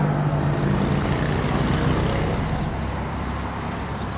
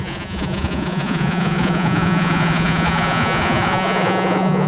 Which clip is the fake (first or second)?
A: second